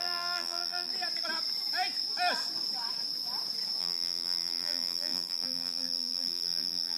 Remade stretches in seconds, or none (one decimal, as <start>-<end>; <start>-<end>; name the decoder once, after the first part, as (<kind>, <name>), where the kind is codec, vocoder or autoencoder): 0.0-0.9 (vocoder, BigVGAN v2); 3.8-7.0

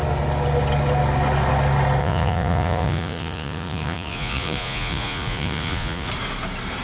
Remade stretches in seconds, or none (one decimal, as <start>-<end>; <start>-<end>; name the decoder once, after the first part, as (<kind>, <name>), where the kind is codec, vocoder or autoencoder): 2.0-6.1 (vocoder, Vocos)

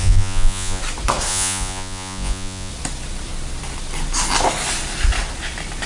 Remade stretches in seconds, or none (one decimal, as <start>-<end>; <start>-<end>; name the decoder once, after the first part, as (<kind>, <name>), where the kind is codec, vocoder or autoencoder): 0.0-0.8 (vocoder, Vocos); 1.3-2.7

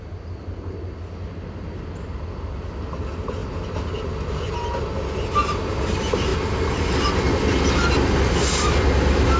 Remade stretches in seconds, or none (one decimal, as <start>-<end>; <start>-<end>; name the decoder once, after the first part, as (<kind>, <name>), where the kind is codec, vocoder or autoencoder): none

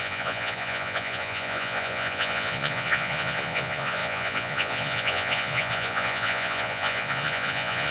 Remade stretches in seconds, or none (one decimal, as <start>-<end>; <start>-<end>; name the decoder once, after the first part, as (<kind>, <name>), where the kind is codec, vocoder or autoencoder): 0.0-7.9 (vocoder, Vocos)

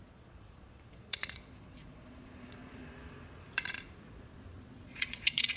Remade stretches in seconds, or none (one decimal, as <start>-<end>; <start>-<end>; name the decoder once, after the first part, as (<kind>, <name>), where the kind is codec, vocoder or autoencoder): 0.0-2.8 (vocoder, Vocos); 3.5-5.6